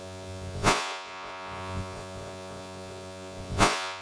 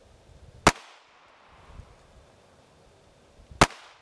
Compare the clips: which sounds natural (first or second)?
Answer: second